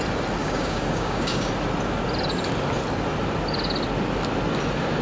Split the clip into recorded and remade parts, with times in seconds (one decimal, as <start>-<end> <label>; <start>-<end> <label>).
0.0-0.4 recorded; 0.4-1.5 remade; 1.5-5.0 recorded